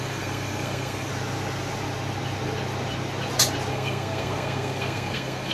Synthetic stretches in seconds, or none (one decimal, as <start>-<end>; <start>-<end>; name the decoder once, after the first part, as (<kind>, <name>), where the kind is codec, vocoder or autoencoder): 0.0-1.1 (codec, SNAC); 3.7-5.5